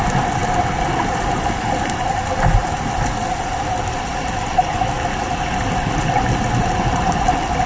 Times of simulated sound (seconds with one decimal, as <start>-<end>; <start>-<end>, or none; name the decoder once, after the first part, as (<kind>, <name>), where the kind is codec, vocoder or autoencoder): none